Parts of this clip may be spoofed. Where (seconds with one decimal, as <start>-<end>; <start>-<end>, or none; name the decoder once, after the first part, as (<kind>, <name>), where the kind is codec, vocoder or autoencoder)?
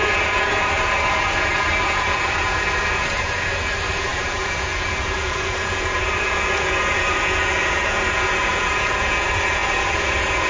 0.0-10.5 (vocoder, Vocos)